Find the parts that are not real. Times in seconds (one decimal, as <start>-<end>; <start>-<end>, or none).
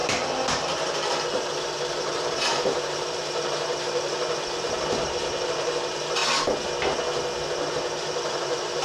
1.4-6.2; 8.0-8.8